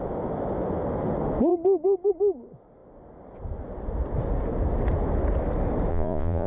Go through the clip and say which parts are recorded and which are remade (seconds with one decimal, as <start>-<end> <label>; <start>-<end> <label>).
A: 0.0-5.9 recorded; 5.9-6.5 remade